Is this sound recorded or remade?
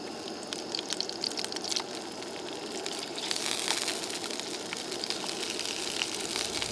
recorded